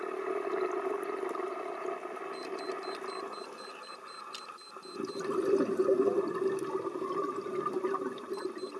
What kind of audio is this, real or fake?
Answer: real